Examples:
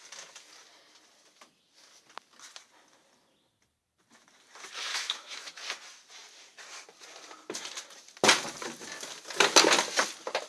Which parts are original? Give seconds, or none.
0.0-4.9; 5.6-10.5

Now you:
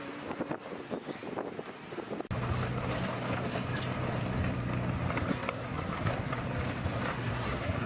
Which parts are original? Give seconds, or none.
0.0-5.3; 6.3-7.1

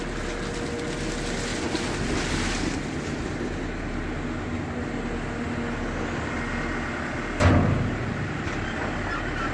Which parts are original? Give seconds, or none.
0.0-9.5